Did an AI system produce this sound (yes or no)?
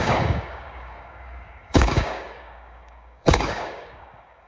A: yes